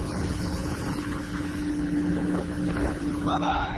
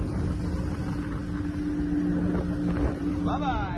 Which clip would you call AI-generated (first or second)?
first